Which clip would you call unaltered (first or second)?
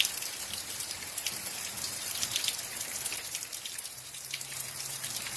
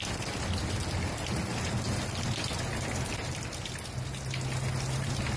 second